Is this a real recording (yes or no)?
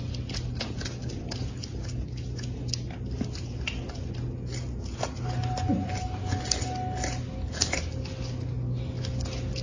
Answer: yes